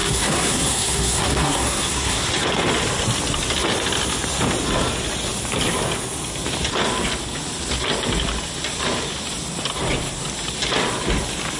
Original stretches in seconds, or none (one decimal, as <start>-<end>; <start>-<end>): 2.3-11.6